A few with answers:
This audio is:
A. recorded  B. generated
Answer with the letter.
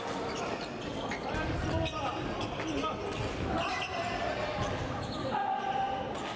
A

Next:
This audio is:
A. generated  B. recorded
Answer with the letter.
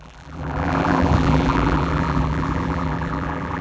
A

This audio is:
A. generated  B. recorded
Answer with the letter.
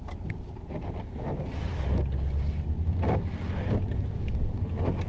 B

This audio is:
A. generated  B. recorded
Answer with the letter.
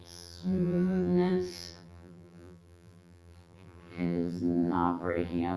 A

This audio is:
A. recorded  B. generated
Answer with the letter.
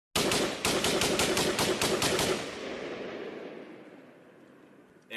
A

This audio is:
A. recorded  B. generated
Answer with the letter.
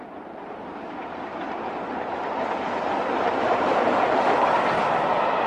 A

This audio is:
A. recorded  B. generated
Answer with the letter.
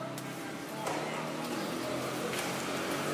A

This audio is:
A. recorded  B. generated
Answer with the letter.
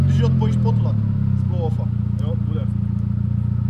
A